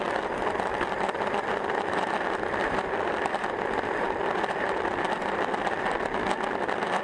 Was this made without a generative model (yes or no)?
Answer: yes